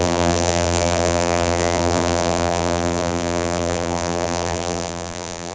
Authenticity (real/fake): fake